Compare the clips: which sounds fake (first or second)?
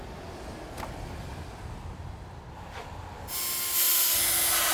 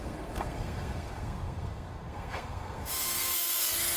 second